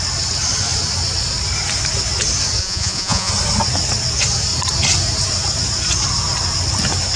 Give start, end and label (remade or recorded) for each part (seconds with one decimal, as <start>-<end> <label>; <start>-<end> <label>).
0.0-2.6 recorded; 2.6-3.3 remade; 3.3-7.2 recorded